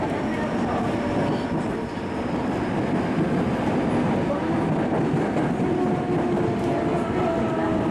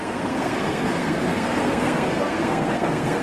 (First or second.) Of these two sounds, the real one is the first